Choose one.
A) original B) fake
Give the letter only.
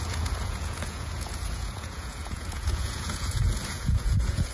B